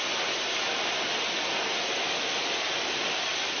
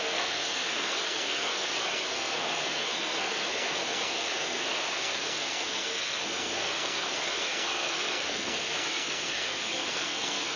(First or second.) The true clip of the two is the first